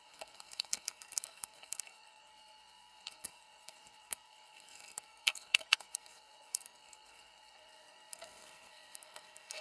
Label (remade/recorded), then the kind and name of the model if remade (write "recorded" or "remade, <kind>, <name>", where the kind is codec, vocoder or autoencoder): remade, codec, SNAC